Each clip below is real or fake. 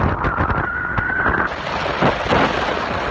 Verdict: real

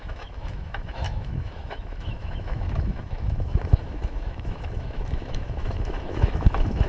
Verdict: fake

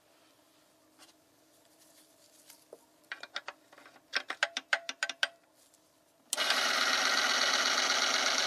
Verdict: real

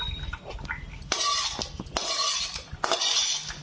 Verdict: real